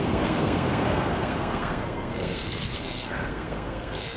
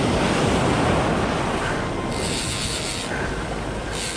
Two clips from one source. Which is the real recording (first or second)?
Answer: second